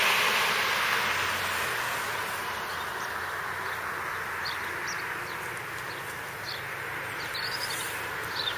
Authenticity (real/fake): real